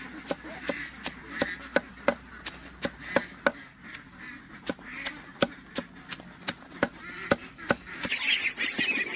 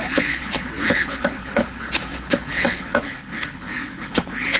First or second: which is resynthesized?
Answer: second